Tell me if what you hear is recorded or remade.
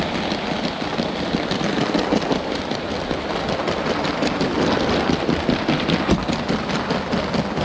recorded